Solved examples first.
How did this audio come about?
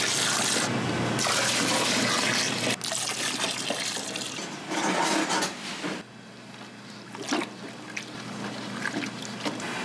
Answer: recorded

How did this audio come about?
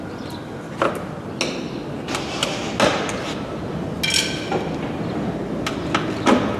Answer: recorded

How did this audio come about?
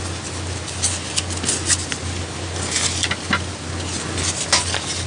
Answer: recorded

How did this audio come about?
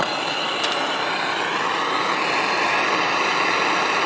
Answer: recorded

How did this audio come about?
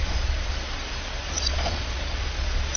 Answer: remade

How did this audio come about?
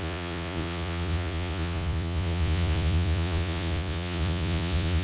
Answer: remade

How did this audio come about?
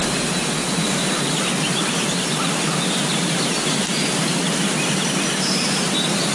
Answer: recorded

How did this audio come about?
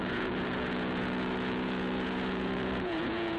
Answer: remade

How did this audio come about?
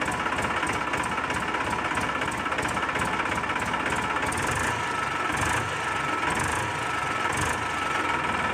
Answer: recorded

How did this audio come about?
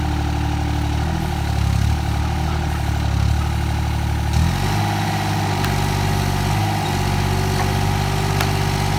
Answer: recorded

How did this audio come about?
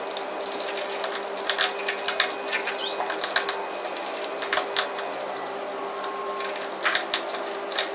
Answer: recorded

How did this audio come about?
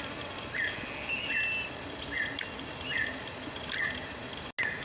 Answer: recorded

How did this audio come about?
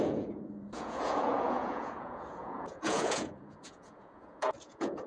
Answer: remade